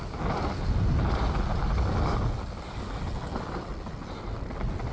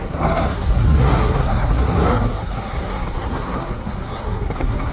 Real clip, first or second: first